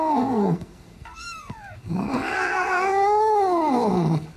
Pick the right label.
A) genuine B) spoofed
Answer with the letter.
B